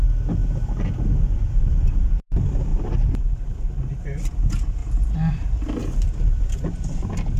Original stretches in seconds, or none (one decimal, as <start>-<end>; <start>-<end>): 0.0-7.4